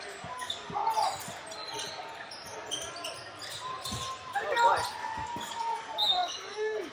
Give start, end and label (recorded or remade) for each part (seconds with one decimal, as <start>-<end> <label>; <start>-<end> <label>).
0.0-0.8 remade; 0.8-4.9 recorded; 4.9-6.9 remade